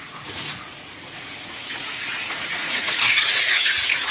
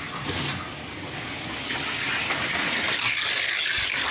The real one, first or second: second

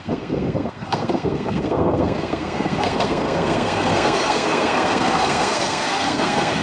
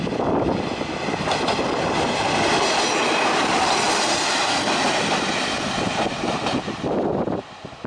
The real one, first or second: second